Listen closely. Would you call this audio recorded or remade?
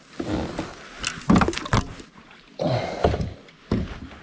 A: recorded